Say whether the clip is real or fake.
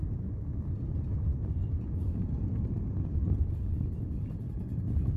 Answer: real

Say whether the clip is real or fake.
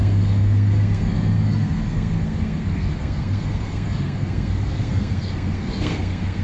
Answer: fake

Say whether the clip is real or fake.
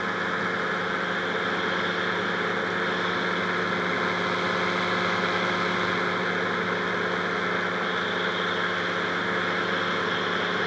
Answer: real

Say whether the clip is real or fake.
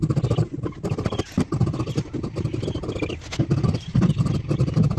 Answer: real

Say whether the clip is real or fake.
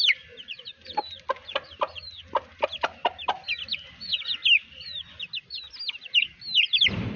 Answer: real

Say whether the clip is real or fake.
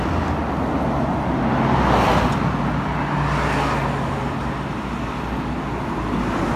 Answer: real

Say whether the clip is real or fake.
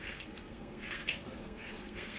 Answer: fake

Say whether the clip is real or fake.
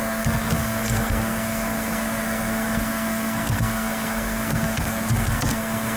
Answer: fake